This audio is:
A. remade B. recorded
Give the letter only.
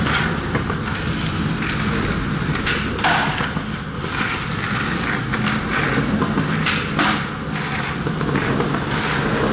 B